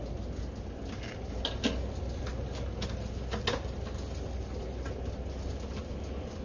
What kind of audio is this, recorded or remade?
recorded